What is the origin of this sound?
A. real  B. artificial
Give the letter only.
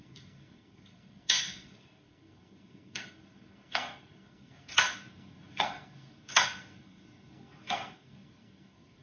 B